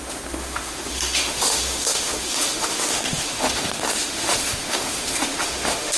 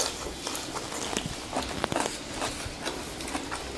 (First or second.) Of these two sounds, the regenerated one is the first